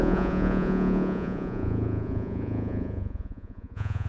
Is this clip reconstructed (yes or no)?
yes